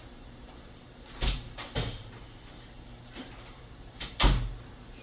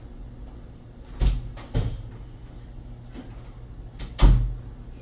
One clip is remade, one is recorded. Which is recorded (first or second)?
second